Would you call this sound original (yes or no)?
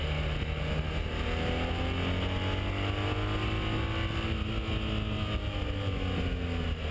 yes